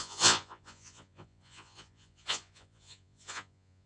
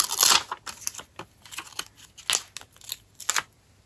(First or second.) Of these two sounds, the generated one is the first